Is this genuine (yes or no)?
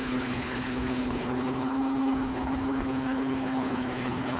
no